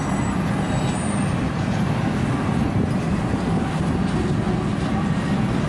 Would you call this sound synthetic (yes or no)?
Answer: no